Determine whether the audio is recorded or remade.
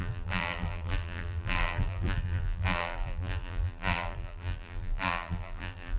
remade